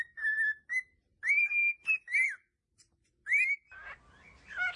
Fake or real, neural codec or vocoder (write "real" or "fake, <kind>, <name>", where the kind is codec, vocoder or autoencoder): real